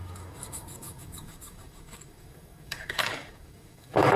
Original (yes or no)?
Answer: no